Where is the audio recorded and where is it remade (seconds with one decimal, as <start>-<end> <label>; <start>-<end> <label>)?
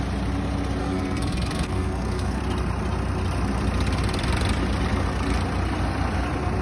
0.0-0.8 recorded; 0.8-2.4 remade; 2.4-6.6 recorded